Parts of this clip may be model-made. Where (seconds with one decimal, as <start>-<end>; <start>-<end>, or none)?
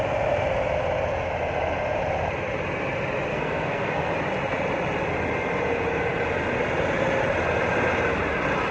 3.3-4.1